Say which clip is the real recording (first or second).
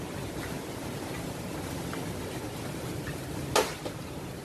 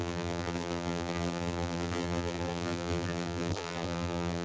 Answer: first